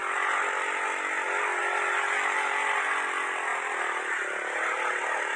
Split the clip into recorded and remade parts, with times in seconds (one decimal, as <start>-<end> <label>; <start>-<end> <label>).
0.0-5.4 recorded